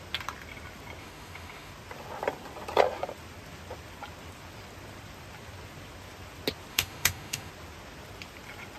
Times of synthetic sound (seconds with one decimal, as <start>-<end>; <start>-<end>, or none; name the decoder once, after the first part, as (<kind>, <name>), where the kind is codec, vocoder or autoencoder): 1.0-1.7 (autoencoder, DAC-VAE); 6.7-7.5